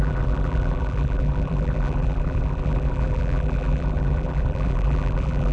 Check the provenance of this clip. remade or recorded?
remade